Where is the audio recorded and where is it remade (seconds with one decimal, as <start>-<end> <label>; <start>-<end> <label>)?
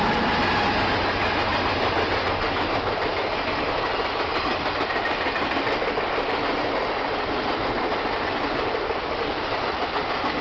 0.0-10.4 recorded